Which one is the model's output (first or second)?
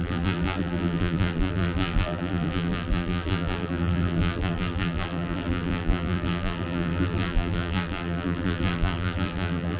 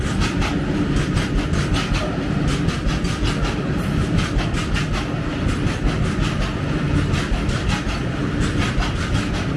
first